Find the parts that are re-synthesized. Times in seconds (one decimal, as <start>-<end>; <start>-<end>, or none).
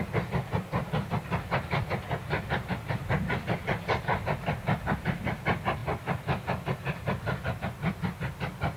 none